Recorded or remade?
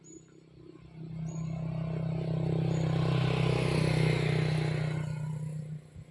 recorded